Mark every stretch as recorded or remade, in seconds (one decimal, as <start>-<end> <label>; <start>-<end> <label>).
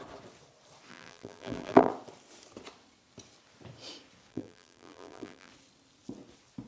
0.0-0.9 recorded; 0.9-1.9 remade; 1.9-4.3 recorded; 4.3-5.5 remade; 5.5-6.7 recorded